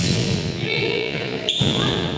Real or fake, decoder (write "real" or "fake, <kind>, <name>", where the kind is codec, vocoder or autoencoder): fake, vocoder, Vocos